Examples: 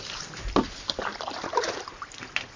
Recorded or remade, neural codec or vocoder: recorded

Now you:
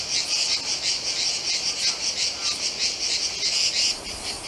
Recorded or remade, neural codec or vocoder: recorded